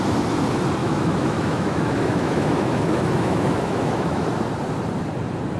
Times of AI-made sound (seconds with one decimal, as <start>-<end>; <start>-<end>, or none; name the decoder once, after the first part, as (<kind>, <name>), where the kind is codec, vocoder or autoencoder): 0.8-4.2 (autoencoder, DAC-VAE)